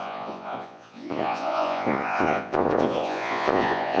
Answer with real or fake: fake